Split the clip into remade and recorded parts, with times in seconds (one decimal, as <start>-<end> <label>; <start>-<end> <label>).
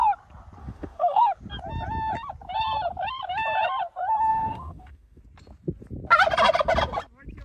0.0-0.6 recorded; 0.6-1.3 remade; 1.3-4.3 recorded; 4.3-5.2 remade; 5.2-7.4 recorded